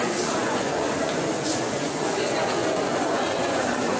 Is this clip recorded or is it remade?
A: remade